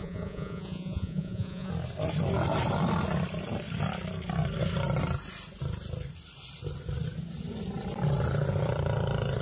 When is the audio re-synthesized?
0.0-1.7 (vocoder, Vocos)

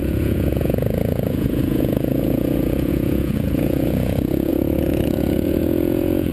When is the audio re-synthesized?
0.0-6.3 (vocoder, Vocos)

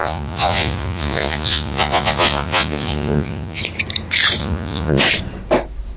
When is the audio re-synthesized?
0.0-3.6 (vocoder, Vocos); 4.4-5.0

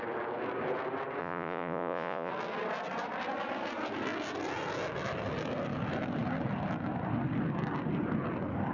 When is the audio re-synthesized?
1.2-2.3 (vocoder, Vocos)

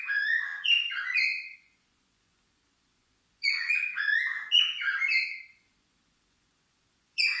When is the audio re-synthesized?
0.0-4.3 (vocoder, Vocos); 5.5-7.4

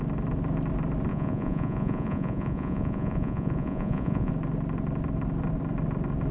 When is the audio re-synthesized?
1.1-4.3 (vocoder, Vocos)

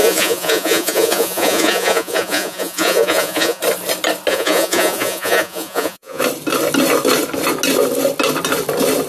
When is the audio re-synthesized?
0.0-3.6 (vocoder, Vocos); 4.3-6.2